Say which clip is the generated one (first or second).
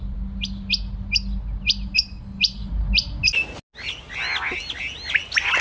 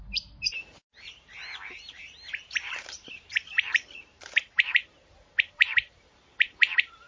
second